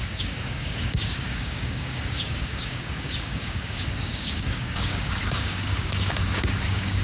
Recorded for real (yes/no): no